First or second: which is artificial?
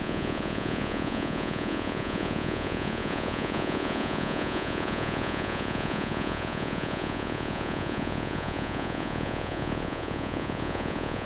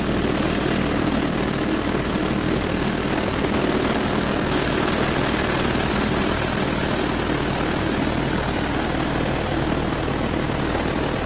first